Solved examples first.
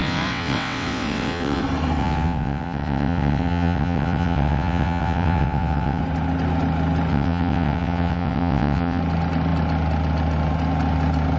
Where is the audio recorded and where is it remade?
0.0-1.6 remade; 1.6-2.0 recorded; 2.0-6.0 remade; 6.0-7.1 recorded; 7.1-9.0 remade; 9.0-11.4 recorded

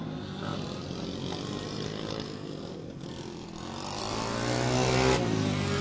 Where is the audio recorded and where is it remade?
0.0-5.8 recorded